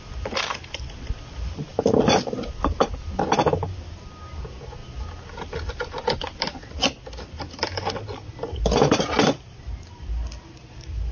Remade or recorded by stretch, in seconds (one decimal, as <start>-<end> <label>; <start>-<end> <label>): 0.0-11.1 recorded